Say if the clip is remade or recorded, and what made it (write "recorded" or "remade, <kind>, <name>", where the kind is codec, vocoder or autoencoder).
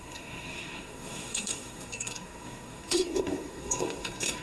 remade, codec, SNAC